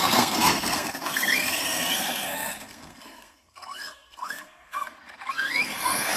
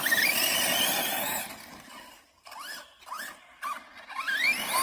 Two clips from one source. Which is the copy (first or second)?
first